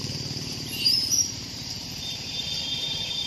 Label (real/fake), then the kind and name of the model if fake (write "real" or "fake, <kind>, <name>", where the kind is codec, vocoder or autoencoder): fake, vocoder, BigVGAN v2